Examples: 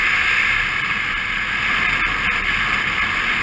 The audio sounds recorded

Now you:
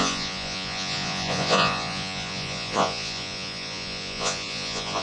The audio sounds remade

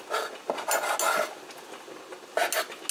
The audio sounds recorded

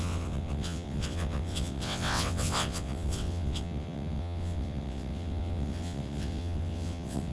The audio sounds remade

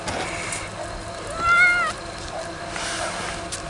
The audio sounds recorded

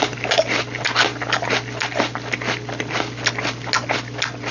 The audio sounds recorded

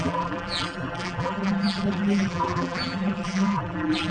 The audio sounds remade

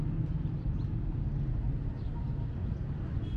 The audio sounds recorded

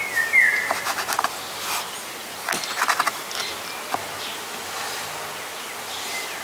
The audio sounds recorded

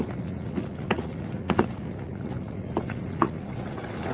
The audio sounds remade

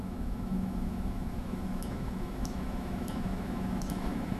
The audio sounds remade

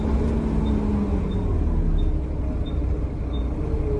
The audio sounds recorded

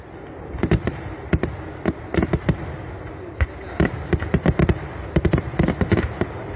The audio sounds recorded